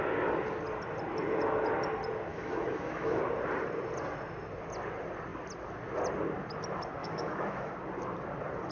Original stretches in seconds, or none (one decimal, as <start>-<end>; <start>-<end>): 0.0-2.3; 3.2-7.0; 7.7-8.7